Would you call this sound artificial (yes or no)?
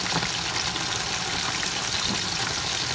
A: no